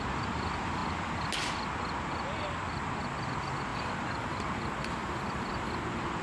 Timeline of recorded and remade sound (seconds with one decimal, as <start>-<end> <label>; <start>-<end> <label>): 0.0-3.7 recorded; 3.7-4.6 remade; 4.6-5.0 recorded; 5.0-5.6 remade; 5.6-6.2 recorded